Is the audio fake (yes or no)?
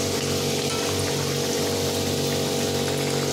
no